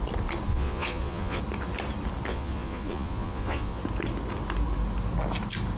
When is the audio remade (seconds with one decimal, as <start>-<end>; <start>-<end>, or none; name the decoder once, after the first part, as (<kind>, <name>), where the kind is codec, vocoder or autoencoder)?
0.5-1.4 (vocoder, Vocos); 2.3-3.8

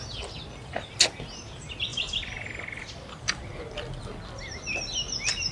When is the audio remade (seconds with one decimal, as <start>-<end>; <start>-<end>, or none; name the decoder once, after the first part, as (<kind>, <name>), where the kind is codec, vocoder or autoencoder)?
none

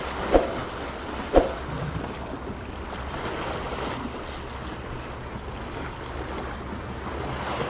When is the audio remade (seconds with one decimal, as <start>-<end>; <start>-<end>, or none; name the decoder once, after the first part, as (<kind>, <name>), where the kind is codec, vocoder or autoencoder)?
none

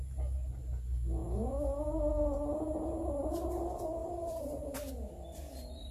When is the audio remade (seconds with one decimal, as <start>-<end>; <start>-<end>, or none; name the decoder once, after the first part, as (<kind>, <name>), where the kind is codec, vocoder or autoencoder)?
2.5-3.6 (vocoder, BigVGAN v2); 4.0-4.9

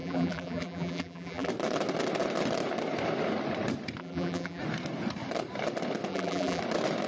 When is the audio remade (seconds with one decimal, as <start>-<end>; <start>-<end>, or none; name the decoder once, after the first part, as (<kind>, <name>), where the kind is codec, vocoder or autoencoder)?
0.0-1.5 (vocoder, BigVGAN v2); 4.0-4.6; 6.1-6.6

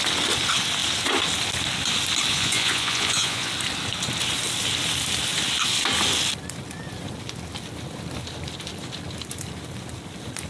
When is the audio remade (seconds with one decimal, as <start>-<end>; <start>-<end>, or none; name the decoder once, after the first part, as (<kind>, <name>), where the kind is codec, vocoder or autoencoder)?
2.3-3.5 (vocoder, Vocos)

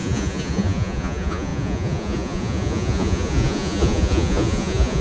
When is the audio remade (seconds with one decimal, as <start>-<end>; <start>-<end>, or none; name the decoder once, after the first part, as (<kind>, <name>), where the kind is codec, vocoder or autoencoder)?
0.0-5.0 (vocoder, Vocos)

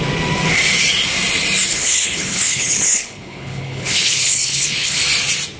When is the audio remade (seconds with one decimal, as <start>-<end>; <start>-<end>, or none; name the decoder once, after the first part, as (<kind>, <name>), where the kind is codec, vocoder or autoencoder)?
1.7-5.0 (codec, HILCodec)